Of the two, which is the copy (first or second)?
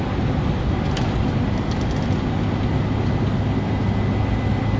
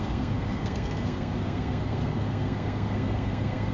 second